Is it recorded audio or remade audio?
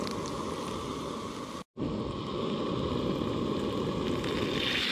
recorded